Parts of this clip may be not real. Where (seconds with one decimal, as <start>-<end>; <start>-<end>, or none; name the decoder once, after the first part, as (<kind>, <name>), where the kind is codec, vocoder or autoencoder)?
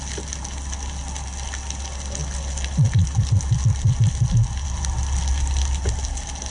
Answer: none